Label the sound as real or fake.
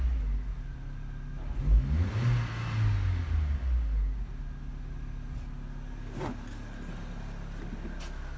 real